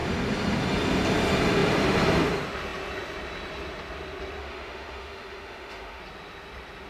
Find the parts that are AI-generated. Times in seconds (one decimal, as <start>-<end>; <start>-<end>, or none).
4.4-6.0